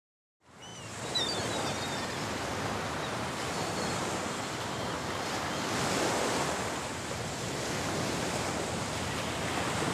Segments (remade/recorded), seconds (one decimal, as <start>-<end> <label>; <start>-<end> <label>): 0.0-0.7 recorded; 0.7-2.5 remade; 2.5-9.9 recorded